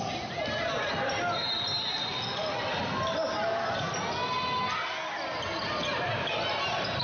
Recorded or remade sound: recorded